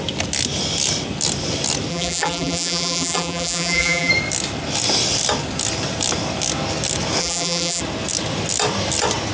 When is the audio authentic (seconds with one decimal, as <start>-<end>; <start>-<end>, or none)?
0.0-1.9; 4.1-7.2; 7.8-9.3